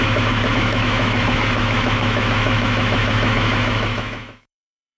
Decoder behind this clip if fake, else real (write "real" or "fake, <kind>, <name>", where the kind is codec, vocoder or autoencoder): fake, autoencoder, DAC-VAE